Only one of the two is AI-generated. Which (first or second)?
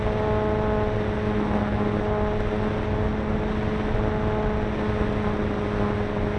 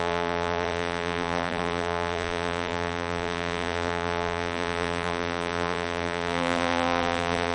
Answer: second